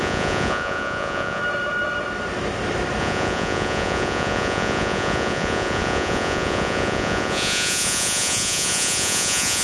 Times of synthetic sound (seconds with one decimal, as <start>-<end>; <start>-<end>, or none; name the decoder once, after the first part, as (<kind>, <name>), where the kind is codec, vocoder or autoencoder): 0.0-1.4 (vocoder, Vocos); 3.0-9.6